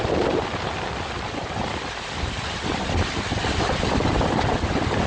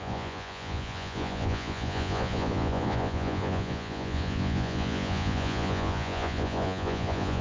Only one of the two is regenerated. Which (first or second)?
second